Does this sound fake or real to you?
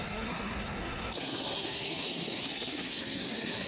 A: fake